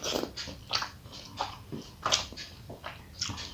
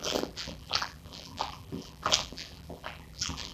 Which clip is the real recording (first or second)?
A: first